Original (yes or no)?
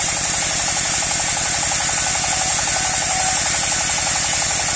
yes